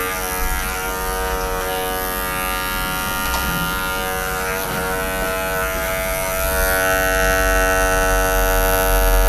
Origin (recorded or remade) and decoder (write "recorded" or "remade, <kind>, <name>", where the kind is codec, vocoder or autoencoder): recorded